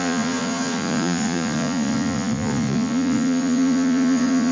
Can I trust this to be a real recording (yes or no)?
no